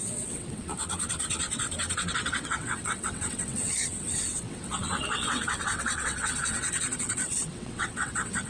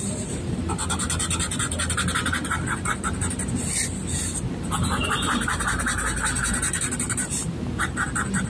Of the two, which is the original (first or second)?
second